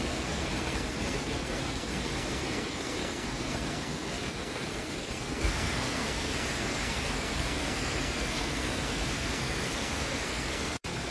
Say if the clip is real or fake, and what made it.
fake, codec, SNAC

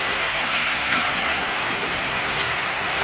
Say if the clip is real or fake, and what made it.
fake, codec, SNAC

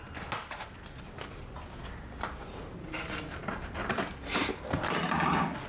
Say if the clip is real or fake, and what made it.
real